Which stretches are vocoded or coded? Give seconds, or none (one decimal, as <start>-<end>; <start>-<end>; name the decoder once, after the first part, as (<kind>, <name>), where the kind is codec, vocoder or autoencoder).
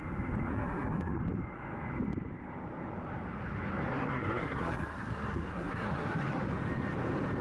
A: 0.5-1.2 (codec, SNAC); 3.9-6.4